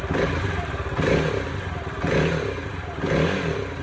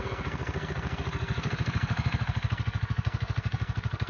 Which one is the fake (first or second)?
second